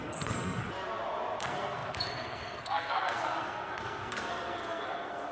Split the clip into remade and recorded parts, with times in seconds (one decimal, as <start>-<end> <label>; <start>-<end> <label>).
0.0-0.6 remade; 0.6-1.4 recorded; 1.4-5.3 remade